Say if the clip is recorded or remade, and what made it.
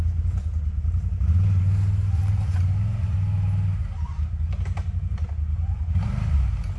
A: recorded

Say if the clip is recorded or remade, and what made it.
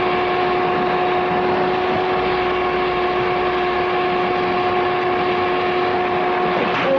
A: recorded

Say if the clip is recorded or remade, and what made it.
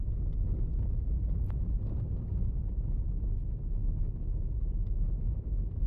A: recorded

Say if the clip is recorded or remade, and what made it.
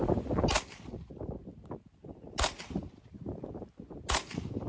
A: recorded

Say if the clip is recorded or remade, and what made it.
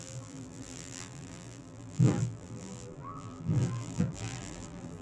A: remade, vocoder, BigVGAN v2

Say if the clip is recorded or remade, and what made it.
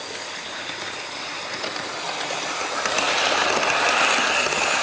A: remade, vocoder, BigVGAN v2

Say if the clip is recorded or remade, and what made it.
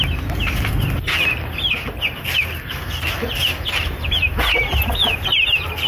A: recorded